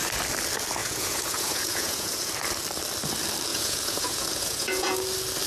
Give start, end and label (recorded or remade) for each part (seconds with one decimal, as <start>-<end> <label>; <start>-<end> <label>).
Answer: 0.0-0.8 recorded; 0.8-2.3 remade; 2.3-3.5 recorded; 3.5-5.0 remade; 5.0-5.5 recorded